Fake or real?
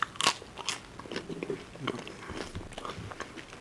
real